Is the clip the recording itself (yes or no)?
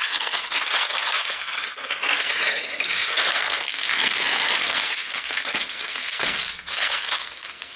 no